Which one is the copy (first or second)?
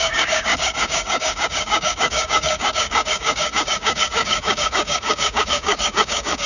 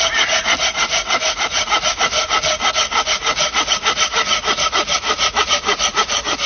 first